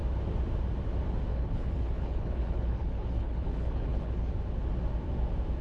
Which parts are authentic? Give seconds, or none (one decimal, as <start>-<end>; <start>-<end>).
0.0-1.3; 4.3-5.6